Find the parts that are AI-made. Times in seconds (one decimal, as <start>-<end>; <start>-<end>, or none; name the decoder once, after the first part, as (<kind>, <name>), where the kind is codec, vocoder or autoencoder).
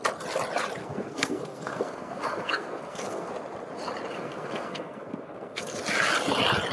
0.8-3.3 (codec, SNAC); 4.1-5.8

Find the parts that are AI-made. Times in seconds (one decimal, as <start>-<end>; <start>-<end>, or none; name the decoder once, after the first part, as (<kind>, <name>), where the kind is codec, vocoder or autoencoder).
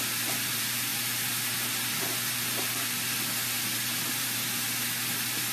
none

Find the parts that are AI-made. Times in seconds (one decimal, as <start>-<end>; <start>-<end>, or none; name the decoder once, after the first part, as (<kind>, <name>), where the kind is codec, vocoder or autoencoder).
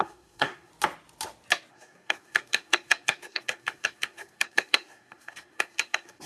0.0-0.7 (codec, SNAC); 1.7-6.3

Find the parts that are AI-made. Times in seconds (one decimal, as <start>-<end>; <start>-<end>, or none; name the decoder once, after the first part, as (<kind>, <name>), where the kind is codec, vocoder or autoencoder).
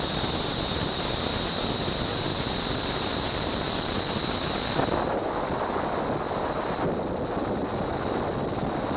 none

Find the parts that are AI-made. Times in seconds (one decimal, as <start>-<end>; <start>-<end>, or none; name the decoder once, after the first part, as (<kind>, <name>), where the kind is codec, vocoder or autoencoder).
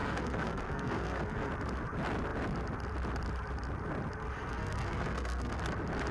0.0-1.5 (codec, SNAC); 4.5-5.6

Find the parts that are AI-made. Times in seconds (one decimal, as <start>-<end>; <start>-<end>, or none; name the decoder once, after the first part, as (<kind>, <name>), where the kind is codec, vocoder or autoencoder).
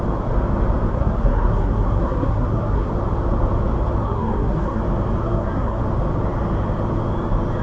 0.9-2.9 (codec, SNAC); 4.0-4.8; 5.2-5.8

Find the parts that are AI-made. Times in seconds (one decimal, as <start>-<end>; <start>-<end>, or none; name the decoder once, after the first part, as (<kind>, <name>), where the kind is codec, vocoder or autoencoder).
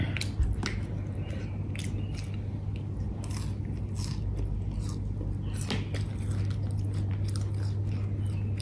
none